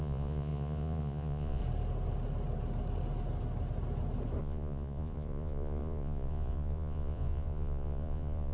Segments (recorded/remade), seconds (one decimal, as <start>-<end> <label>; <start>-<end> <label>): 0.0-1.6 remade; 1.6-4.4 recorded; 4.4-8.5 remade